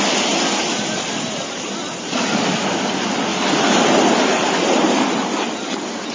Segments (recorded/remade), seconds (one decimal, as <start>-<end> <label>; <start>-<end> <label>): 0.0-6.1 recorded

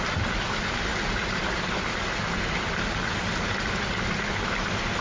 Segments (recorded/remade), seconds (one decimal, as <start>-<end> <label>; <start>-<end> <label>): 0.0-5.0 recorded

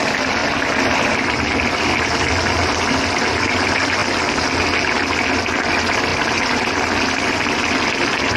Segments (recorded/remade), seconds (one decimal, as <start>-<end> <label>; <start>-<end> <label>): 0.0-8.4 recorded

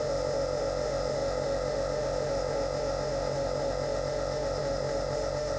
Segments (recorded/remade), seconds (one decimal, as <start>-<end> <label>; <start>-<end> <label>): 0.0-5.6 remade

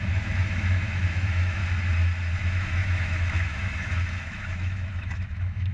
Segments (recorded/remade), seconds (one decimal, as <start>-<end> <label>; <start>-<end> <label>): 0.0-1.6 remade; 1.6-2.4 recorded; 2.4-5.7 remade

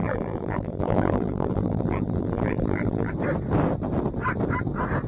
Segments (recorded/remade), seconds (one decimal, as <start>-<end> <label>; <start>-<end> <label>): 0.0-3.1 remade; 3.1-5.1 recorded

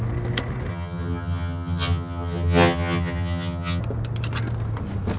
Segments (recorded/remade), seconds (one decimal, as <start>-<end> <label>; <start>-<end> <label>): 0.0-0.7 recorded; 0.7-3.8 remade; 3.8-5.2 recorded

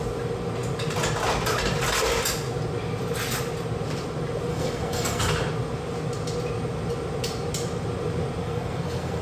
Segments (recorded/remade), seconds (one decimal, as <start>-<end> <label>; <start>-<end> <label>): 0.0-4.5 recorded; 4.5-5.2 remade; 5.2-8.4 recorded; 8.4-9.2 remade